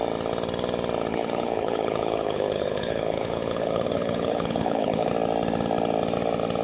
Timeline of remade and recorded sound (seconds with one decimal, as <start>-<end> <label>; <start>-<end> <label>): 0.0-1.1 recorded; 1.1-5.1 remade; 5.1-6.6 recorded